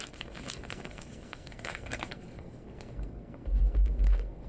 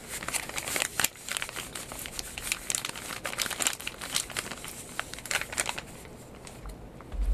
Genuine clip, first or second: second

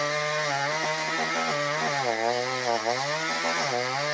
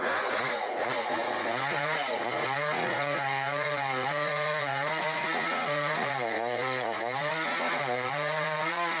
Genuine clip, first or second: first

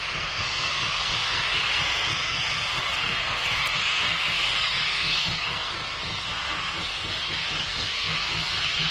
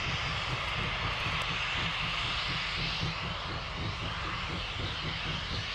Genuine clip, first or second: second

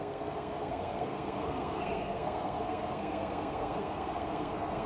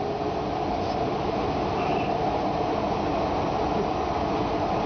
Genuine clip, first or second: second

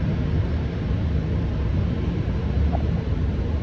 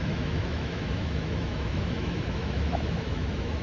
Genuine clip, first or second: first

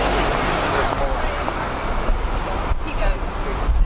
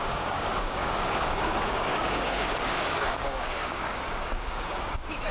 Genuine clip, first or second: first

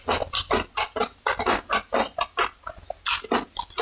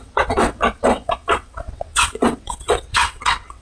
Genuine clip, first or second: first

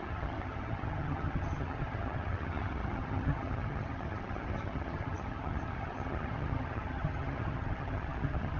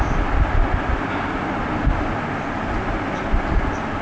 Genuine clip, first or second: second